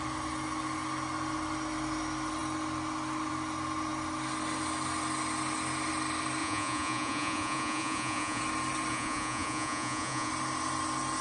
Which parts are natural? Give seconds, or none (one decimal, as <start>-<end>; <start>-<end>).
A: 0.0-6.4; 8.4-8.9; 10.3-11.2